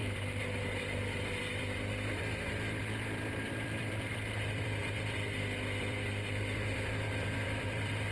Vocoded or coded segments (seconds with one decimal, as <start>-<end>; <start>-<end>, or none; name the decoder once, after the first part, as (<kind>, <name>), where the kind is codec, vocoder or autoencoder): 0.0-8.1 (vocoder, BigVGAN v2)